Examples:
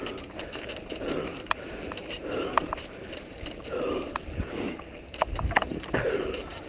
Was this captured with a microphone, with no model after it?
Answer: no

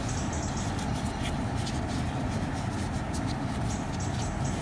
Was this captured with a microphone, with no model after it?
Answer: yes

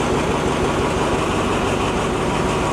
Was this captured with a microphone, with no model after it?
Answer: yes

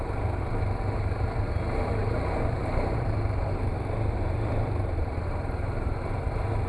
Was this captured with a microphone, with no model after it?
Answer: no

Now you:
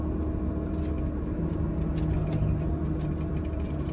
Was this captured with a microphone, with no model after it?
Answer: yes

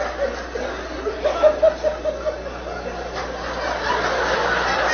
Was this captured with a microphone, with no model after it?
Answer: yes